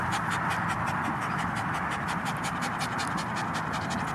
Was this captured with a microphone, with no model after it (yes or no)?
yes